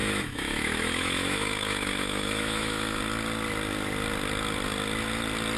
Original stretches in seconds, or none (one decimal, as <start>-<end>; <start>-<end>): 3.0-5.6